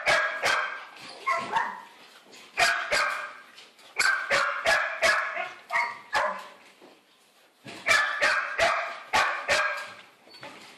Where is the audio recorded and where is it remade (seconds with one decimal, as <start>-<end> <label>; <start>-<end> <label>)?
0.0-8.3 recorded; 8.3-10.3 remade; 10.3-10.8 recorded